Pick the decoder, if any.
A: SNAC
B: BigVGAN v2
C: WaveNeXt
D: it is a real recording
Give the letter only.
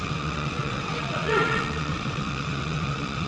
C